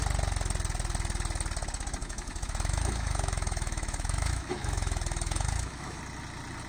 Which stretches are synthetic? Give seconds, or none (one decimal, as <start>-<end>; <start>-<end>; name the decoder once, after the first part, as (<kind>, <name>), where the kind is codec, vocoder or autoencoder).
2.0-6.0 (autoencoder, DAC-VAE)